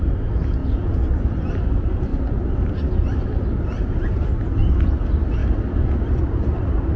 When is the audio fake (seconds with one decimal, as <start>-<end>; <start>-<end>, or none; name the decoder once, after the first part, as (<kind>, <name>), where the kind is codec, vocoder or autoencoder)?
none